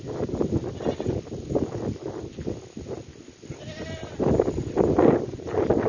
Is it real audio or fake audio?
real